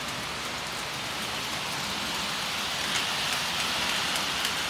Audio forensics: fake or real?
real